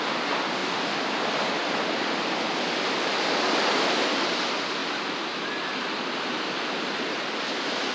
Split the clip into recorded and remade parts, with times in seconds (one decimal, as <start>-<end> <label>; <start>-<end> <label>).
0.0-7.9 recorded